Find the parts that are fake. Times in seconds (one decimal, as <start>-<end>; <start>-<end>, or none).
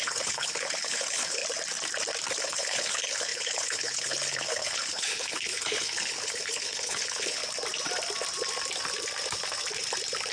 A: 0.0-1.4; 2.4-7.4